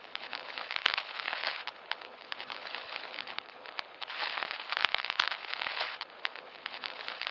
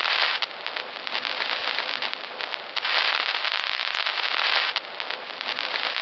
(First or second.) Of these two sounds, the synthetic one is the first